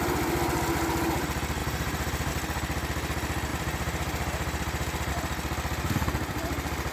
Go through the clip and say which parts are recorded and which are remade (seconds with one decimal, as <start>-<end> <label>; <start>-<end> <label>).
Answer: 0.0-1.6 recorded; 1.6-2.3 remade; 2.3-3.5 recorded; 3.5-5.1 remade; 5.1-6.9 recorded